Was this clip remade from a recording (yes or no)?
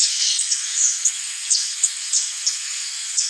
yes